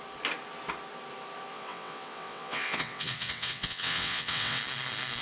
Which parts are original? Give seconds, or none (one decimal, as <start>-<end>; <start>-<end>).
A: 0.0-1.5; 4.6-5.2